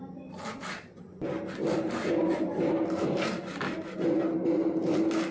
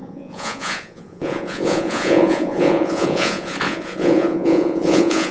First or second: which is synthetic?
second